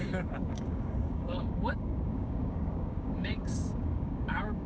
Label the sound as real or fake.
fake